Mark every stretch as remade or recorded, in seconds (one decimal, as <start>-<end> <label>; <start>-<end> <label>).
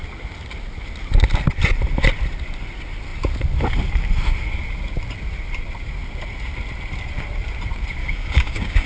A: 0.0-8.0 recorded; 8.0-8.9 remade